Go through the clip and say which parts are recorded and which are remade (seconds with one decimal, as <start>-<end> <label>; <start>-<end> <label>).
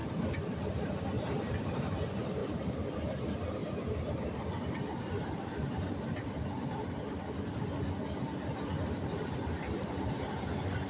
0.0-0.7 remade; 0.7-2.4 recorded; 2.4-3.0 remade; 3.0-10.9 recorded